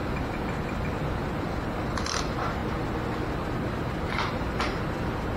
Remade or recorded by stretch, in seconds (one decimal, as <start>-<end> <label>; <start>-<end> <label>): 0.0-5.4 recorded